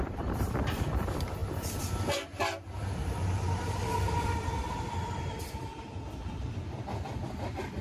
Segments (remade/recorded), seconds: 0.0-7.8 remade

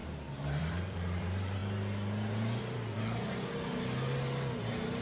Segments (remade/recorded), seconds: 0.0-1.6 remade; 1.6-4.6 recorded; 4.6-5.0 remade

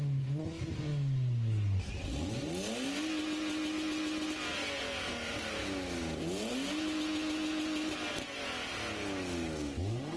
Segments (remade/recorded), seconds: 0.0-10.2 recorded